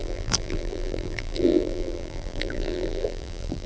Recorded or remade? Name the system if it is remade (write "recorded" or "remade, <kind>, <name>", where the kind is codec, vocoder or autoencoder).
remade, vocoder, BigVGAN v2